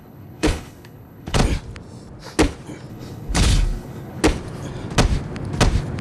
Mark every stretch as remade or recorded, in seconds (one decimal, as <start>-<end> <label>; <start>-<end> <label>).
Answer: 0.0-1.4 remade; 1.4-2.9 recorded; 2.9-4.2 remade; 4.2-6.0 recorded